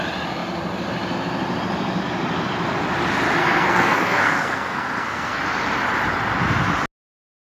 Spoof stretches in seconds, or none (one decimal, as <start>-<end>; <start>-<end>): 3.4-5.4